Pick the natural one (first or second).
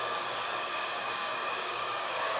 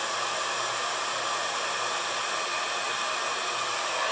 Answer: second